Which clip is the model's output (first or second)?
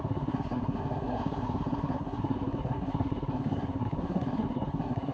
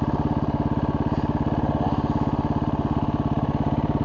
first